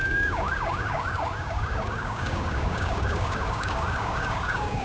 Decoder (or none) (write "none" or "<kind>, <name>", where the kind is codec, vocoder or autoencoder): codec, DAC